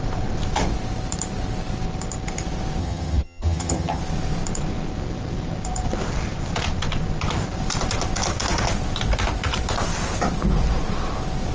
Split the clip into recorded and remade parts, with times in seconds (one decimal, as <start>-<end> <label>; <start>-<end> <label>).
0.0-2.8 recorded; 2.8-4.0 remade; 4.0-11.5 recorded